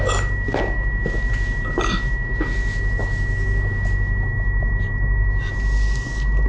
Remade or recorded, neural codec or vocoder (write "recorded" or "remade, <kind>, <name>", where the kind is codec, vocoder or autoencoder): recorded